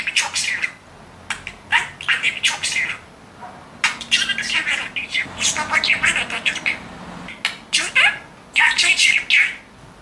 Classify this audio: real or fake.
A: real